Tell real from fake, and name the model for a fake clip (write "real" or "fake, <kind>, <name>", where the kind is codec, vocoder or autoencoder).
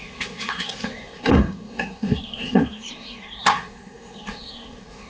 fake, codec, SNAC